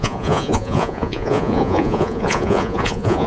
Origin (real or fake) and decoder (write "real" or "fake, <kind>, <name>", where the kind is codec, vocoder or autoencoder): fake, vocoder, Vocos